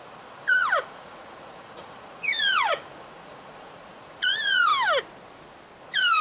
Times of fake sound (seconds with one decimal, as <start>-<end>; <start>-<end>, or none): 0.0-4.7; 5.8-6.2